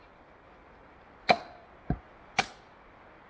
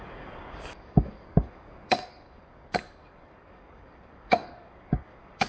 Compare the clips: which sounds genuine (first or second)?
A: first